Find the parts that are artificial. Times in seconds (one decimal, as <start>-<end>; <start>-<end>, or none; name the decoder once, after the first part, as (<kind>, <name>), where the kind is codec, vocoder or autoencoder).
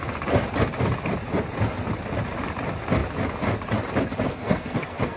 4.3-5.2 (codec, SNAC)